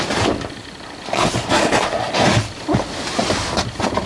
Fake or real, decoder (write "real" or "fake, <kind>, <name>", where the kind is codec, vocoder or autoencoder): real